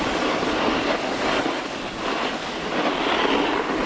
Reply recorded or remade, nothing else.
recorded